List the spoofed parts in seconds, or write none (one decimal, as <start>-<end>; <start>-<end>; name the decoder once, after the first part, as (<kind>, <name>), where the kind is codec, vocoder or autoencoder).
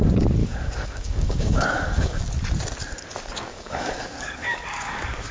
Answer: 0.4-2.2 (codec, DAC); 3.5-5.3